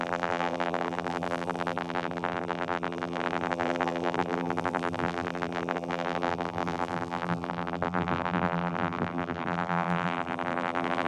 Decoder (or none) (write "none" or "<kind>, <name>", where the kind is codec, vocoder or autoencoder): vocoder, BigVGAN v2